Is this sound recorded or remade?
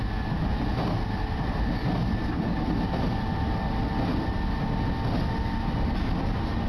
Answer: recorded